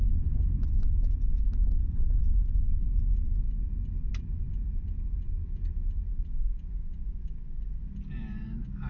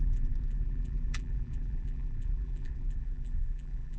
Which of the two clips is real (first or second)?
first